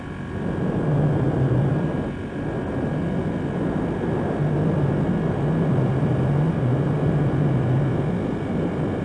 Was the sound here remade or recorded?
recorded